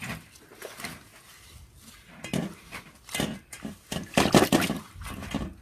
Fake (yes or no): no